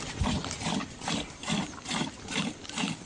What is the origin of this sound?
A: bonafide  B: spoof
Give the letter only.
B